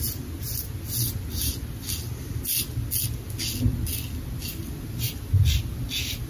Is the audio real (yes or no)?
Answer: yes